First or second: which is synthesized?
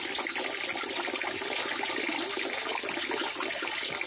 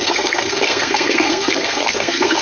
second